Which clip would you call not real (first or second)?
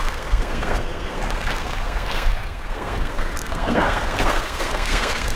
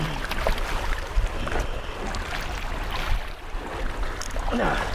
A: first